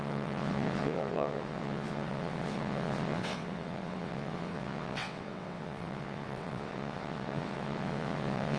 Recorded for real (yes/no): no